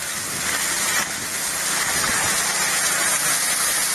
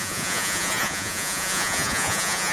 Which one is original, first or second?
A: first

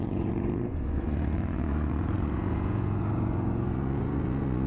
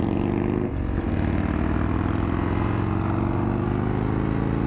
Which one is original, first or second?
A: second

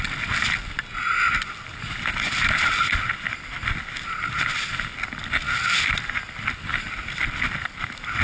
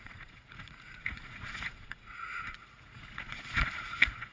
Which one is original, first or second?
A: first